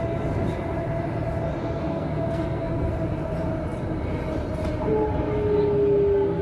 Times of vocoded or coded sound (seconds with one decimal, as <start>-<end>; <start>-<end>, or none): 1.6-2.9